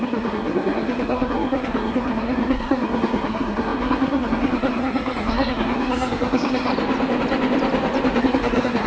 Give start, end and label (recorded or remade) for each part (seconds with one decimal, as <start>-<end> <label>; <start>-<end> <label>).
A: 0.0-6.7 remade; 6.7-8.2 recorded; 8.2-8.9 remade